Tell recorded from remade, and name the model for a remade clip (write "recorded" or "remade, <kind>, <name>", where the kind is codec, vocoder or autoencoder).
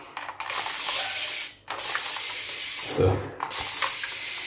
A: recorded